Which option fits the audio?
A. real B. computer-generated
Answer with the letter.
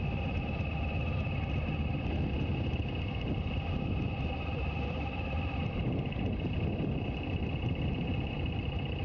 A